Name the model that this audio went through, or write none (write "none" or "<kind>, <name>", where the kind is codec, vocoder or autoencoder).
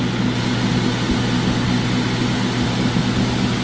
none